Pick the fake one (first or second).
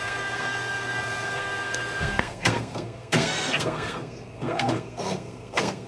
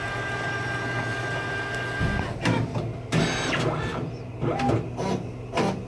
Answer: first